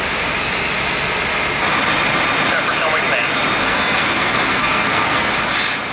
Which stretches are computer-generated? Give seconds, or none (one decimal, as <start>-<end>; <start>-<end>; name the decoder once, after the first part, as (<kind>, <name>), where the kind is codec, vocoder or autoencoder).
3.6-5.3 (codec, SNAC)